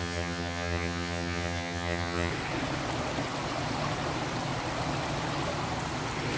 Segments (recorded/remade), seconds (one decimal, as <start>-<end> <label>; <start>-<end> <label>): 0.0-2.3 remade; 2.3-6.4 recorded